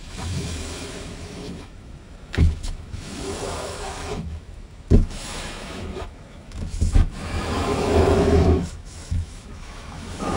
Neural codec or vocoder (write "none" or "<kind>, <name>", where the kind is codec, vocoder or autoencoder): autoencoder, DAC-VAE